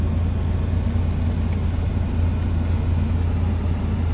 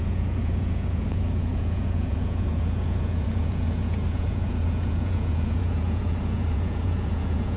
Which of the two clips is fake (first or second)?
second